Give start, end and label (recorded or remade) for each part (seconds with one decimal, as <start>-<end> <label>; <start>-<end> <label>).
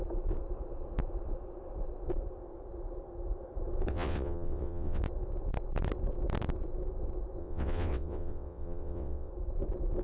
0.0-3.9 recorded; 3.9-5.0 remade; 5.0-7.4 recorded; 7.4-9.3 remade; 9.3-10.0 recorded